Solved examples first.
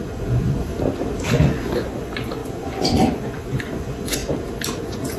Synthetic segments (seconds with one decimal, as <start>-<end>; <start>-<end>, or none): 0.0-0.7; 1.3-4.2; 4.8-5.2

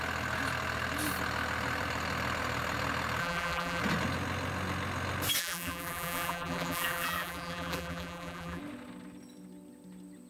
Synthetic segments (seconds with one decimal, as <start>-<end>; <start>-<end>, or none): 3.2-3.8; 5.4-8.6

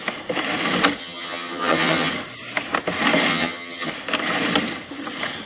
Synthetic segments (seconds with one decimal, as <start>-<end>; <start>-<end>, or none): 1.0-2.1; 3.3-3.9

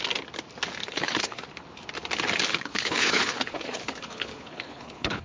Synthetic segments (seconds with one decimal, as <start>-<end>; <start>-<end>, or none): 0.8-1.4; 2.5-5.2

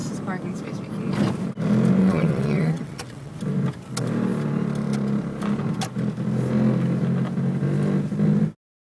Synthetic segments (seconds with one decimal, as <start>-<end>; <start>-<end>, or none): 2.0-3.3

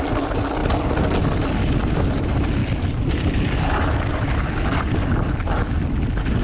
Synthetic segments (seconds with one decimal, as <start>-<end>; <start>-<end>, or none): none